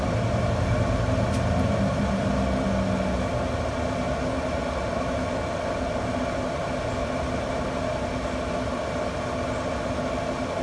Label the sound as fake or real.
real